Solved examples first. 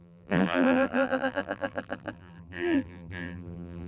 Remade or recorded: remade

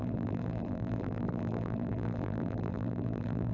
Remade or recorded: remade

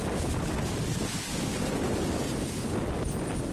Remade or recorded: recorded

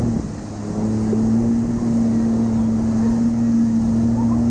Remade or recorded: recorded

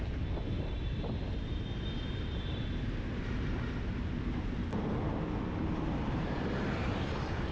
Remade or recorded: remade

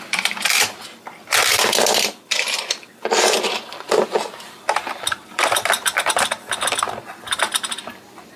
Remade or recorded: remade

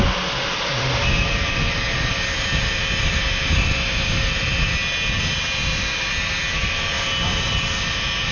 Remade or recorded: recorded